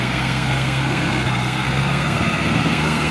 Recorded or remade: remade